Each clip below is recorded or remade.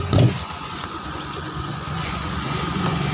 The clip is remade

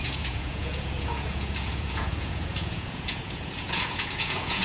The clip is remade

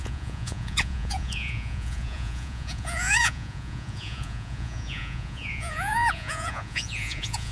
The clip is remade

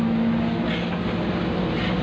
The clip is recorded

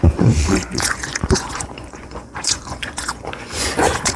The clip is remade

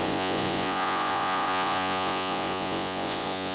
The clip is remade